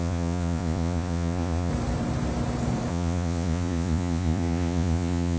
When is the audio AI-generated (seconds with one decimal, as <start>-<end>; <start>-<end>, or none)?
0.0-1.7; 2.9-5.4